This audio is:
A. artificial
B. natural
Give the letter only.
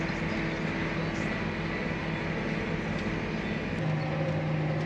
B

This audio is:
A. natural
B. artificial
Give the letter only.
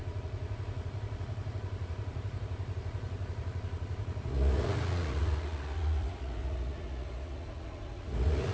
B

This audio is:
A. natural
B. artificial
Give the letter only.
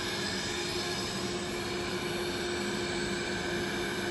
A